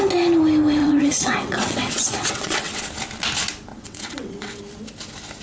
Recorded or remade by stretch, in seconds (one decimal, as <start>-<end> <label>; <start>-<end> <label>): 0.0-0.8 recorded; 0.8-2.8 remade; 2.8-3.7 recorded; 3.7-4.6 remade; 4.6-5.4 recorded